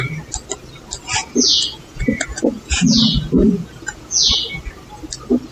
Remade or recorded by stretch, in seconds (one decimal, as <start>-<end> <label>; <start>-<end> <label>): 0.0-1.2 recorded; 1.2-4.5 remade; 4.5-5.5 recorded